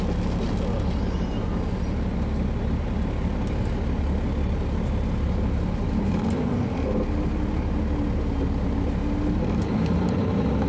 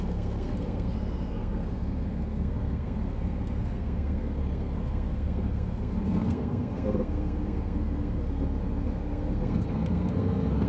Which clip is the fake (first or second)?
second